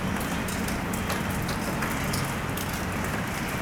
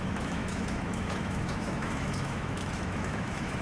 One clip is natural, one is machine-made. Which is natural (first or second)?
first